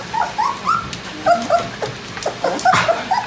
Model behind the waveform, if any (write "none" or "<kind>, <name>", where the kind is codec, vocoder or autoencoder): none